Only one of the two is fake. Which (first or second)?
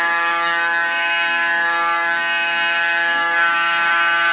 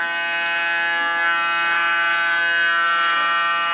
first